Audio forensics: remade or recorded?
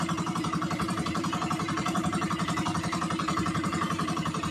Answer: remade